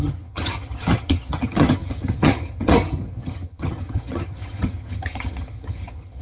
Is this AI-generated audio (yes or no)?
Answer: yes